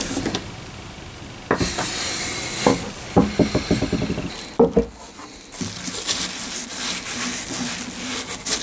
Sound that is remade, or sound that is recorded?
recorded